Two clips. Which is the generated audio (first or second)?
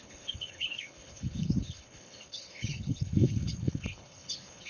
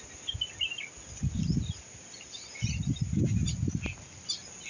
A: first